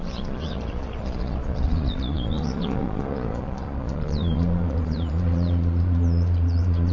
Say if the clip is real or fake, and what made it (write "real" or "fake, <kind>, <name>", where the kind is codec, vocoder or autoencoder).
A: fake, vocoder, Vocos